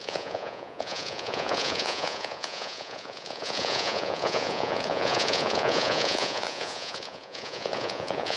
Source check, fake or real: fake